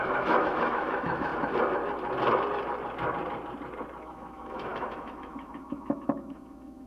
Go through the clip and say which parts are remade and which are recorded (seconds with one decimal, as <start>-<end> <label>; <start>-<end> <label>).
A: 0.0-1.3 remade; 1.3-4.0 recorded; 4.0-6.9 remade